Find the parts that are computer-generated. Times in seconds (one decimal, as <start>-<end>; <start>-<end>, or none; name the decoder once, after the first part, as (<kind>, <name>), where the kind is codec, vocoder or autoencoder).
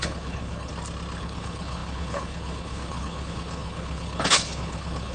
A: 0.0-0.7 (codec, HILCodec); 1.2-5.1